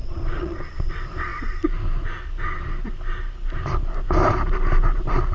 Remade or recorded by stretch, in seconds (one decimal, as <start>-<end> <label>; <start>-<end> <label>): 0.0-0.9 remade; 0.9-5.3 recorded